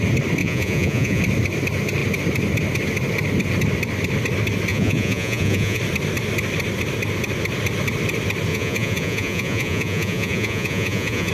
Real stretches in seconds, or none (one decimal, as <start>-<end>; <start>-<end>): 0.0-0.4; 1.2-4.7; 5.8-8.5